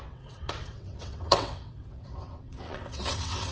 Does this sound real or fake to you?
fake